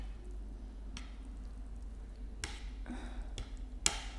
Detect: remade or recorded recorded